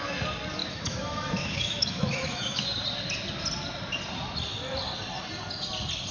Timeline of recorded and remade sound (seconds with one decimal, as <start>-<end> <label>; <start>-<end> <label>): 0.0-0.6 recorded; 0.6-2.6 remade; 2.6-6.1 recorded